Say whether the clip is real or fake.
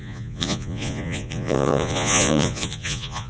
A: fake